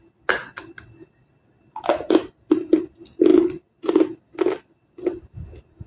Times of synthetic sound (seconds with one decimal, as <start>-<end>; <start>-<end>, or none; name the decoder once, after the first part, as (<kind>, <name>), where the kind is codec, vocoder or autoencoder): none

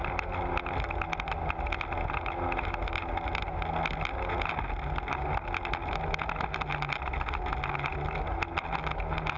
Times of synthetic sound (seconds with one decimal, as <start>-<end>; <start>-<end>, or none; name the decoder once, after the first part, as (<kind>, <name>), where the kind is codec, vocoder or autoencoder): none

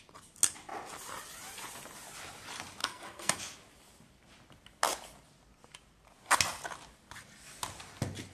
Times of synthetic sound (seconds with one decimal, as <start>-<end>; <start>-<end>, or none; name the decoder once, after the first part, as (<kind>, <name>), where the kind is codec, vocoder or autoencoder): 2.8-3.4 (codec, SNAC)

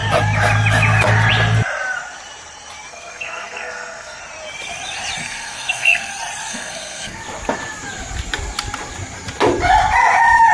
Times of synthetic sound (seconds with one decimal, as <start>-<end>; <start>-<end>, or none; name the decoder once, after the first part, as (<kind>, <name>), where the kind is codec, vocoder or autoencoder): 2.9-4.2 (codec, SNAC); 5.2-6.1; 6.5-7.2